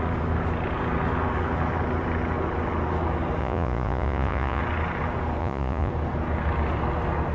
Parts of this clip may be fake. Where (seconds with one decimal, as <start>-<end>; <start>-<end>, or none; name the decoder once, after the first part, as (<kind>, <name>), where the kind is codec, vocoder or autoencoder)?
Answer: 3.4-4.6 (vocoder, Vocos); 5.4-5.9